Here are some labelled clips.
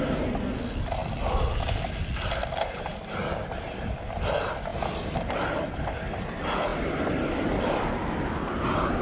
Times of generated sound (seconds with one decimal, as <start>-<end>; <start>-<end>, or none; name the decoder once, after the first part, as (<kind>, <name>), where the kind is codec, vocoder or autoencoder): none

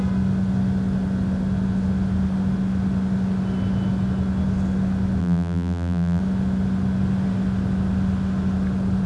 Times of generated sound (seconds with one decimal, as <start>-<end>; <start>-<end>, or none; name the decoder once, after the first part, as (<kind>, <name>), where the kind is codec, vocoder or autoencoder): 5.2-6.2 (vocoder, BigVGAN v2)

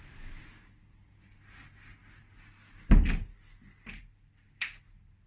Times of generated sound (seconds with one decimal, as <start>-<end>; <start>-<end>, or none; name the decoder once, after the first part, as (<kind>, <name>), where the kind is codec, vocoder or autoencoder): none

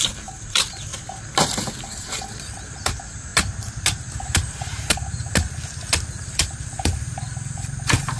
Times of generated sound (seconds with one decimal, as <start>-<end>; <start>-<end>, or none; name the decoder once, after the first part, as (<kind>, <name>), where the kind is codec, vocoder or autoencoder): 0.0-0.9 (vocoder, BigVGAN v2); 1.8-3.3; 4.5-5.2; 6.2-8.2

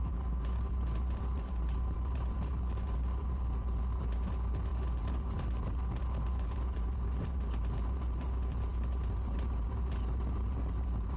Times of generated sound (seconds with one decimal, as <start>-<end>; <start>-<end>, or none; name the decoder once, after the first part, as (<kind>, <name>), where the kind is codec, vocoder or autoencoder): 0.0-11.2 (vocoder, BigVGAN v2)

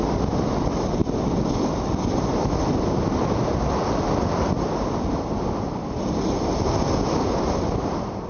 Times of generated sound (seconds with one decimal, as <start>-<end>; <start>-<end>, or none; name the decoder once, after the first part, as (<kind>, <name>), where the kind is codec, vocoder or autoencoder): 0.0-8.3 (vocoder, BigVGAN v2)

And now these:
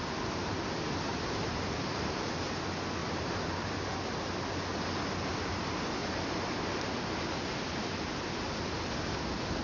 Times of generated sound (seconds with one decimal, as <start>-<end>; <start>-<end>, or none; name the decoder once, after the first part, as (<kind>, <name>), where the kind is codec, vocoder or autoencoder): 1.1-2.2 (vocoder, BigVGAN v2); 3.0-3.7; 6.0-7.4